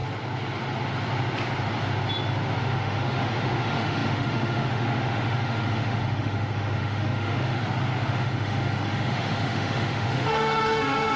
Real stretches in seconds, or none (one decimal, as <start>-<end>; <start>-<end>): 0.0-2.6; 7.6-8.1